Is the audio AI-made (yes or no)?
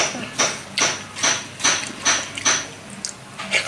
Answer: no